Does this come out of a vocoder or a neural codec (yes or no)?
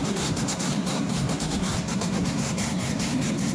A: yes